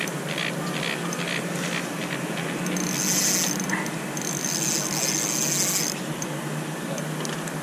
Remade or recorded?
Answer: recorded